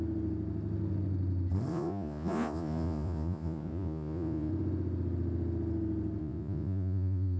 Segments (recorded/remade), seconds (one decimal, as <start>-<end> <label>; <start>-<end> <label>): 0.0-1.7 recorded; 1.7-4.5 remade; 4.5-6.2 recorded; 6.2-7.4 remade